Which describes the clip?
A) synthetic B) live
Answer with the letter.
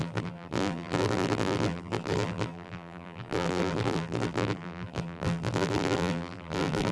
A